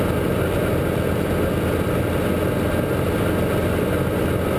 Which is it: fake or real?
real